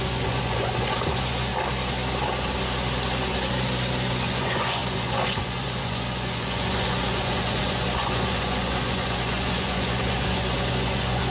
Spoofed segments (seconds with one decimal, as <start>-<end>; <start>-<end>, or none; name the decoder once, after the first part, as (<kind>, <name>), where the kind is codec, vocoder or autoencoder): 0.0-1.5 (vocoder, Vocos); 4.1-11.3